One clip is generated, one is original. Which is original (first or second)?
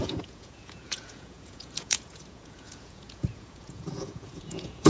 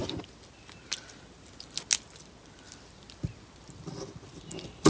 second